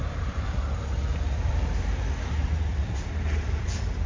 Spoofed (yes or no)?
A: yes